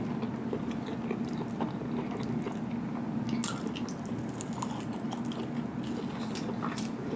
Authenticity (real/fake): real